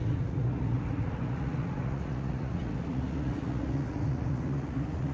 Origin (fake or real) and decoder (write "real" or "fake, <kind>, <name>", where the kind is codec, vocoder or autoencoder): fake, vocoder, Vocos